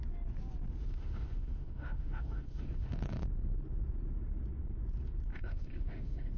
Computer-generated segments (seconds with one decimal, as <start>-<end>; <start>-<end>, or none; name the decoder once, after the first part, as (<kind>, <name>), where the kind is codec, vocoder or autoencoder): 0.8-3.2 (autoencoder, DAC-VAE); 5.3-6.4